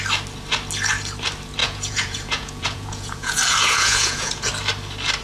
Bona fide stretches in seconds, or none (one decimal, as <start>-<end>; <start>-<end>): 0.0-1.6; 4.5-5.2